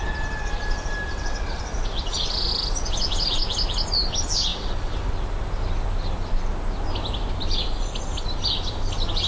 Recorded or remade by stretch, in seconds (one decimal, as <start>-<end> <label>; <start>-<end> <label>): 0.0-1.1 recorded; 1.1-2.5 remade; 2.5-4.5 recorded; 4.5-5.1 remade; 5.1-9.3 recorded